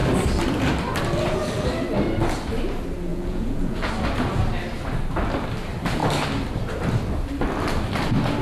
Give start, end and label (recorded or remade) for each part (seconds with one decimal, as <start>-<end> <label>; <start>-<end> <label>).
0.0-3.1 recorded; 3.1-3.9 remade; 3.9-8.4 recorded